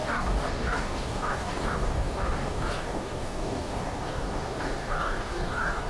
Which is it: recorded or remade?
remade